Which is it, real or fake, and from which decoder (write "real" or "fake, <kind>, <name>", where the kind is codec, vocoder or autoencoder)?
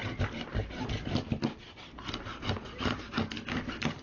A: real